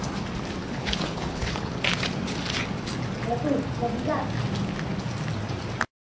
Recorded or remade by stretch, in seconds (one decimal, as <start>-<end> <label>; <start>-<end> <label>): 0.0-0.6 recorded; 0.6-1.7 remade; 1.7-6.1 recorded